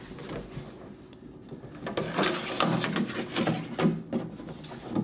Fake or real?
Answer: real